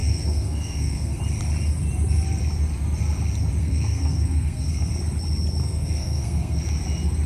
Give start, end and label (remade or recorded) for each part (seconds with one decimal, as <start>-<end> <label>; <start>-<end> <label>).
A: 0.0-1.2 remade; 1.2-3.6 recorded; 3.6-4.9 remade; 4.9-5.6 recorded; 5.6-6.6 remade; 6.6-7.3 recorded